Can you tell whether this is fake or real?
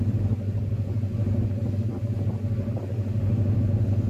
real